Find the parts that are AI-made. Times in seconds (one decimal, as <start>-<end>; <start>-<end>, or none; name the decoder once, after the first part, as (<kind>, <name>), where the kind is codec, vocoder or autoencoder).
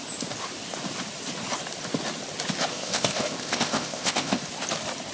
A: 2.7-4.4 (codec, ZipCodec)